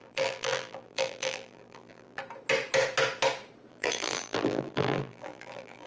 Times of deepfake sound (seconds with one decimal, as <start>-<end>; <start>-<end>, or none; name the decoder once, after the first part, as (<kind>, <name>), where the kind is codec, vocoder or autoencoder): 0.0-2.2 (vocoder, BigVGAN v2); 3.7-5.9